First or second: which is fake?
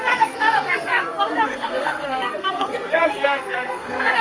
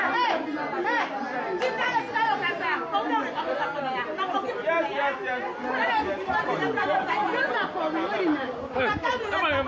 first